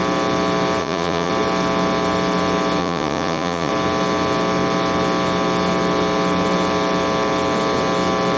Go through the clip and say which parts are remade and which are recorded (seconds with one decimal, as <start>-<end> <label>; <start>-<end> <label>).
0.0-0.8 recorded; 0.8-1.3 remade; 1.3-2.8 recorded; 2.8-3.7 remade; 3.7-8.4 recorded